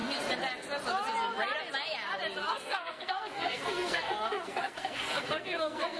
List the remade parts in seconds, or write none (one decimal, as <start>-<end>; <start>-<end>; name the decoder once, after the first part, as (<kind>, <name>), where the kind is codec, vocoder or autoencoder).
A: 2.4-6.0 (codec, SNAC)